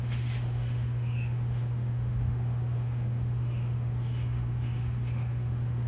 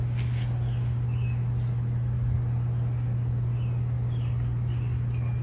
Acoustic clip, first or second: second